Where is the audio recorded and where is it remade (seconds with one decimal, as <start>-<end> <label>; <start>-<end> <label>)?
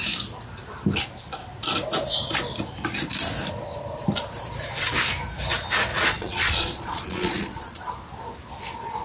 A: 0.0-5.9 recorded; 5.9-7.9 remade; 7.9-9.0 recorded